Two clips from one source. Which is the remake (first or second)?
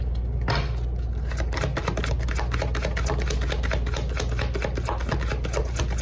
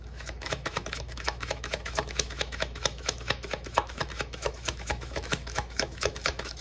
second